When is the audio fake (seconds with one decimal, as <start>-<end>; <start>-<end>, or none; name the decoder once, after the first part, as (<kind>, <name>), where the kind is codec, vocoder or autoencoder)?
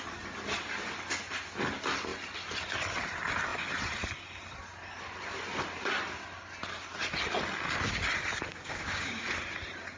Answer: 8.5-9.2 (codec, DAC)